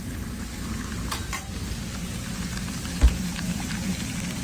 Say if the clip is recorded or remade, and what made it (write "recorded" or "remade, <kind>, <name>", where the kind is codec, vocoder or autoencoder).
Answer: remade, vocoder, BigVGAN v2